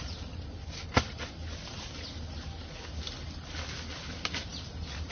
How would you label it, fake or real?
real